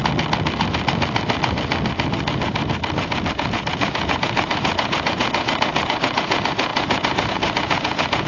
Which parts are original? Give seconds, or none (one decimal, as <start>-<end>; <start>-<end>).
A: 0.0-3.3